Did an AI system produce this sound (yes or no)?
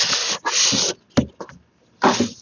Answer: no